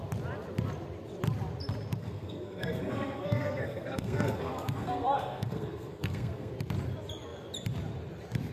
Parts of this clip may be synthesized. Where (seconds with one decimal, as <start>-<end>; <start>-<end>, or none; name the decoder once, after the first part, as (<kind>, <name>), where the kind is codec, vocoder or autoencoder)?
2.0-6.5 (codec, SNAC)